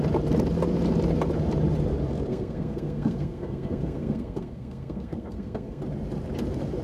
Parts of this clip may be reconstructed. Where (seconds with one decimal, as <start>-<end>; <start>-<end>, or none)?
2.3-5.8